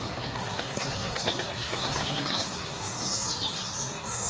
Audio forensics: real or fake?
fake